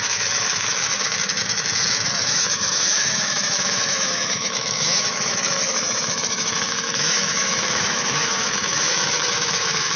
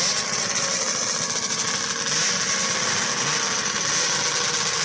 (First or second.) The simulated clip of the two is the first